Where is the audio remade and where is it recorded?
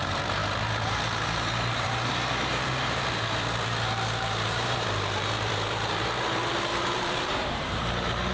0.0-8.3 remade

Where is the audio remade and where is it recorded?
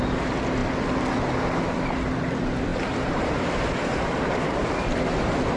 0.0-2.7 recorded; 2.7-5.0 remade; 5.0-5.6 recorded